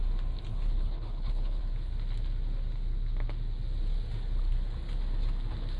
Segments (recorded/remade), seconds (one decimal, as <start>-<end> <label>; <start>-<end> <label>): 0.0-0.5 recorded; 0.5-1.6 remade; 1.6-5.8 recorded